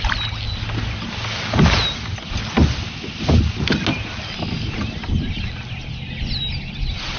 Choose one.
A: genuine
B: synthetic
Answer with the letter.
A